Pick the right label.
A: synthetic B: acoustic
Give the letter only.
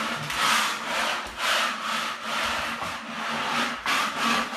B